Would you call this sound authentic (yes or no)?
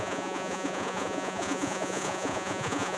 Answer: no